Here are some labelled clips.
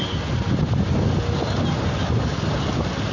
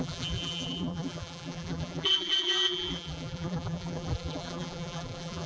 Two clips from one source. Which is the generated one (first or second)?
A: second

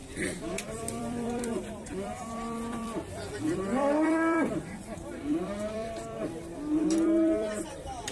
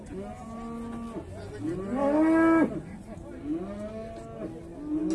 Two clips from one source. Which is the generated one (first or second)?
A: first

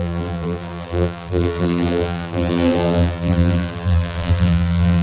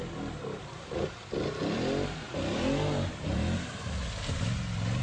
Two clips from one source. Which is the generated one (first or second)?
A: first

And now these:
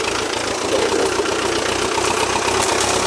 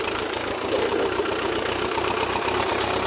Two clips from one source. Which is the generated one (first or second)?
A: second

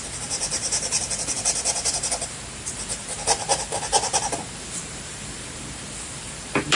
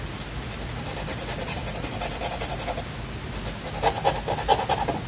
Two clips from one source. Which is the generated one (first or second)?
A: first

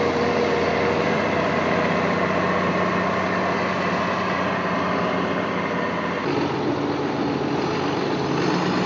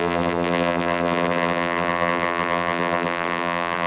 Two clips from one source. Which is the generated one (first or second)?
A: second